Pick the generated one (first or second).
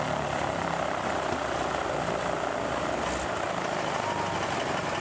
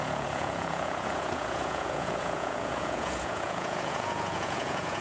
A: second